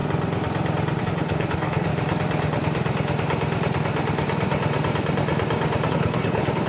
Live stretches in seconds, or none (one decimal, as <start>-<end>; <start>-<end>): 0.0-1.0; 1.9-5.9